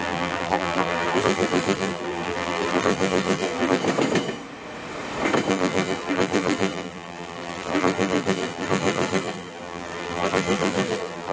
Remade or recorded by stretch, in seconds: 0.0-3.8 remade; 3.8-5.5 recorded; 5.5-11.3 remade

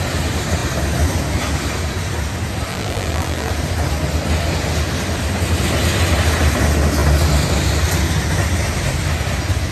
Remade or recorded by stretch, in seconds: 0.0-2.7 recorded; 2.7-3.5 remade; 3.5-9.7 recorded

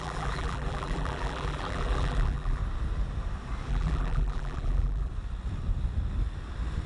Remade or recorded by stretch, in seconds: 0.0-2.6 remade; 2.6-3.7 recorded; 3.7-5.1 remade; 5.1-6.9 recorded

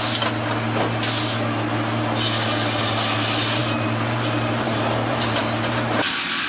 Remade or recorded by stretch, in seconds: 0.0-3.6 recorded; 3.6-6.1 remade; 6.1-6.5 recorded

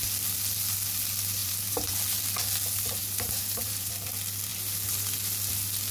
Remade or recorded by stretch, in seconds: 0.0-1.4 recorded; 1.4-1.9 remade; 1.9-3.0 recorded; 3.0-3.9 remade; 3.9-5.9 recorded

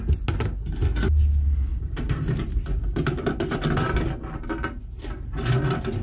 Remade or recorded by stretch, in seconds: 0.0-1.7 recorded; 1.7-3.3 remade; 3.3-6.0 recorded

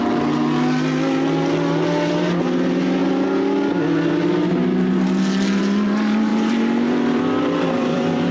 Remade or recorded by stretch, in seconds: 0.0-6.3 recorded; 6.3-8.3 remade